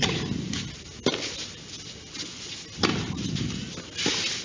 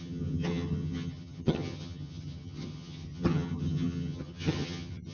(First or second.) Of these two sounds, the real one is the first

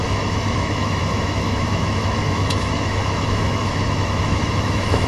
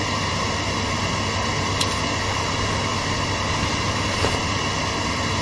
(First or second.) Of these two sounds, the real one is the second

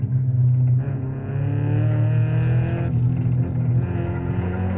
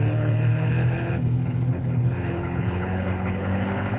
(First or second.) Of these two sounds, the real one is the first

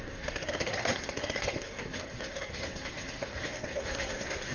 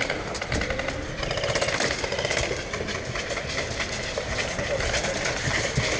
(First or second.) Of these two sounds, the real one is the second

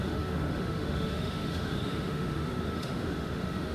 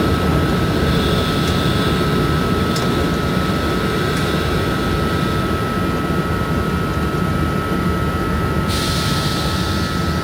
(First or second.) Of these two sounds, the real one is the second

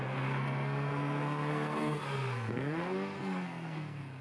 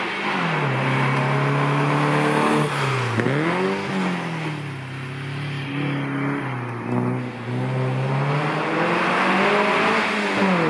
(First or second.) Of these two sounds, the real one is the second